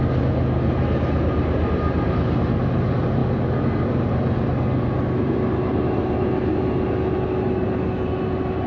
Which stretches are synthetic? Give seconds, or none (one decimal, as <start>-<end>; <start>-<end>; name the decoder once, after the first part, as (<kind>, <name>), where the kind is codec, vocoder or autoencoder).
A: none